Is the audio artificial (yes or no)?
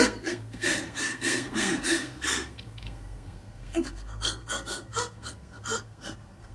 yes